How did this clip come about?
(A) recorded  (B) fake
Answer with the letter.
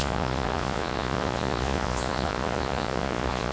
B